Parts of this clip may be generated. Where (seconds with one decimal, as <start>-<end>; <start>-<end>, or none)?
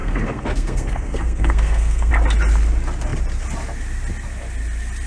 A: 0.0-2.1